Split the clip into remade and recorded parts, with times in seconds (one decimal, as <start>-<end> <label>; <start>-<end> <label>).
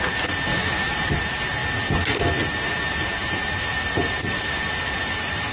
0.0-1.6 remade; 1.6-3.6 recorded; 3.6-5.5 remade